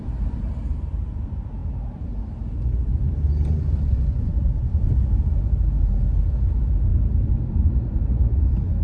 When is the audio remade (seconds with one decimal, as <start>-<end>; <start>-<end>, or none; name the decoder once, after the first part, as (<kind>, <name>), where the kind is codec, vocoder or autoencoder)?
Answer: 0.0-6.9 (vocoder, BigVGAN v2); 7.5-8.8